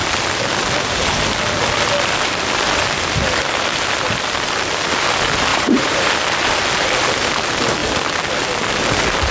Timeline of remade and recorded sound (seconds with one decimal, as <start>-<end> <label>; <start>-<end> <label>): 0.0-5.5 recorded; 5.5-6.1 remade; 6.1-9.3 recorded